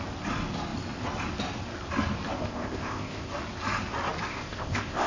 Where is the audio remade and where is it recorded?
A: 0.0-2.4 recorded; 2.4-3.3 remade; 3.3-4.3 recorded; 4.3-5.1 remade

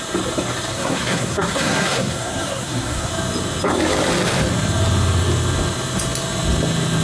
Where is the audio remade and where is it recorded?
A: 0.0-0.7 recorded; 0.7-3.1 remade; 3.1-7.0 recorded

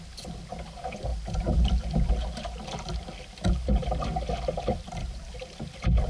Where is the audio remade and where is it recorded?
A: 0.0-6.1 recorded

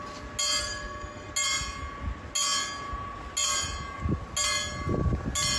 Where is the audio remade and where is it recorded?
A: 0.0-0.6 recorded; 0.6-1.3 remade; 1.3-5.6 recorded

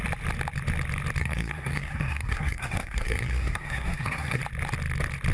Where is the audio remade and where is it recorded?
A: 0.0-1.2 recorded; 1.2-4.4 remade; 4.4-5.3 recorded

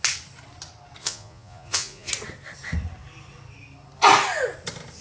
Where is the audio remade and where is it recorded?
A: 0.0-1.0 recorded; 1.0-2.1 remade; 2.1-5.0 recorded